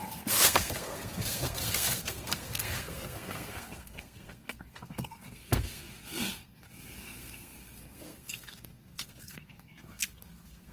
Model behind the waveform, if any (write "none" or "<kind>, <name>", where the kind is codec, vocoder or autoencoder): codec, SNAC